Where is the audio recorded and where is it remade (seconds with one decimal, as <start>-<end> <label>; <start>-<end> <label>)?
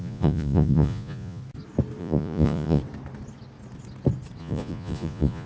0.0-1.4 remade; 1.4-2.0 recorded; 2.0-2.8 remade; 2.8-4.4 recorded; 4.4-5.5 remade